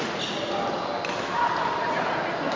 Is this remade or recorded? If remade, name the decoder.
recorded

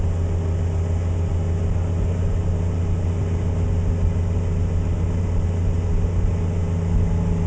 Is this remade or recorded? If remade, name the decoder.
recorded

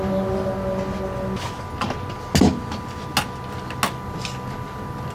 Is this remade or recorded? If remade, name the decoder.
recorded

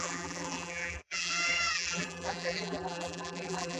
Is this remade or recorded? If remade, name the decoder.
remade, vocoder, BigVGAN v2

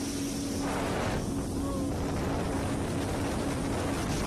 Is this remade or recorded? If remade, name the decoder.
recorded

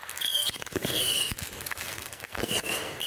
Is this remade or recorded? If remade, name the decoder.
remade, codec, SNAC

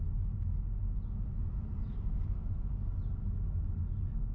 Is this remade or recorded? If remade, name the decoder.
recorded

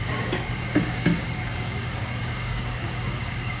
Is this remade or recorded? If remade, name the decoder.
remade, codec, DAC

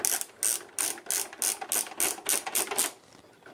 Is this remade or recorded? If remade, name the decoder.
recorded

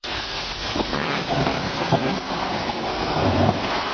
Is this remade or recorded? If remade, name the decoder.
remade, codec, SNAC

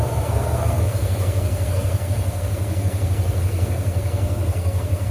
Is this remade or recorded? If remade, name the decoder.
remade, codec, SNAC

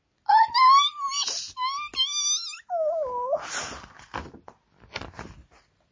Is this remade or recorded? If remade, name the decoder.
recorded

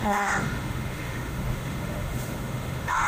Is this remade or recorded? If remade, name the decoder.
remade, autoencoder, DAC-VAE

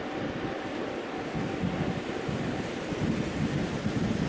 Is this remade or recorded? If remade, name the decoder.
recorded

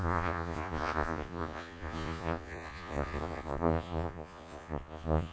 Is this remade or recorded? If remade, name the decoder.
remade, vocoder, Vocos